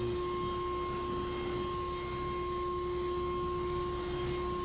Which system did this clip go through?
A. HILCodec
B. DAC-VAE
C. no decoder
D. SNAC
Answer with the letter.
C